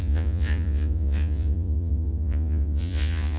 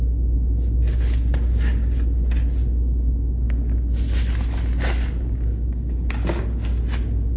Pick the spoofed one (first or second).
first